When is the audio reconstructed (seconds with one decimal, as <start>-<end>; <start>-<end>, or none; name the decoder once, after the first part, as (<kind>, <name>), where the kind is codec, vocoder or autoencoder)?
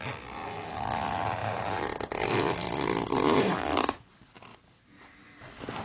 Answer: 1.4-2.3 (vocoder, BigVGAN v2); 3.1-4.1